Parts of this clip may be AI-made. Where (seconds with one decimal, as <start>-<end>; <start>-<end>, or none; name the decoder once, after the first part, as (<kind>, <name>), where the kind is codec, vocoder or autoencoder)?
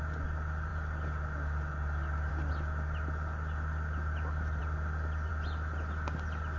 none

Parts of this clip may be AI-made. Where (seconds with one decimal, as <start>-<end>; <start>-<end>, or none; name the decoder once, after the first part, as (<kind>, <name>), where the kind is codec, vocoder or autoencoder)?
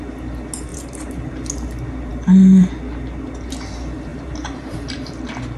0.7-1.3 (vocoder, BigVGAN v2); 4.1-5.1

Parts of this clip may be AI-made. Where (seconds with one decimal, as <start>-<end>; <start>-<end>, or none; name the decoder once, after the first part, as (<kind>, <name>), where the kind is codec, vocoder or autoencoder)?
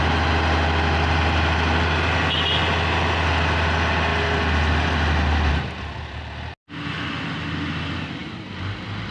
none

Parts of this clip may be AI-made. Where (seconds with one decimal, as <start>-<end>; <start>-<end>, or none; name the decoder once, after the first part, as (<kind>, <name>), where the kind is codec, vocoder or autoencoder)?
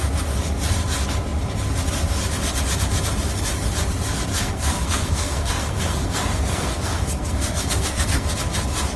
4.3-8.3 (codec, SNAC)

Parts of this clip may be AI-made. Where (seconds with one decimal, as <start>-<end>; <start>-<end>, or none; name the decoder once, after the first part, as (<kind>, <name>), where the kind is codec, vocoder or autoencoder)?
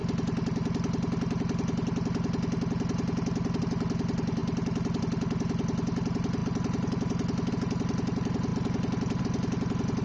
none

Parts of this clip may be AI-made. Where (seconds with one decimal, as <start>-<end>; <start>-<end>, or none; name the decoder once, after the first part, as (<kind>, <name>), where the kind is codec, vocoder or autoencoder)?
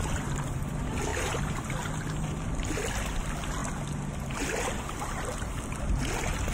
1.1-1.7 (vocoder, BigVGAN v2)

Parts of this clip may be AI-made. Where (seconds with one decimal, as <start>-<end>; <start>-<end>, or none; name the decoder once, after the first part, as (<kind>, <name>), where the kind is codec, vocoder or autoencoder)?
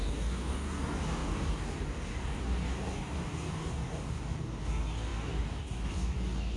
0.0-6.6 (codec, DAC)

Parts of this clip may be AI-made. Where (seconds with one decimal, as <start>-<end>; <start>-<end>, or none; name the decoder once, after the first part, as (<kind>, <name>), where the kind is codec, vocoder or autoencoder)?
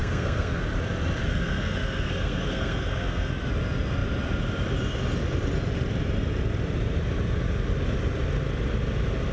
0.0-0.6 (codec, SNAC); 1.2-3.3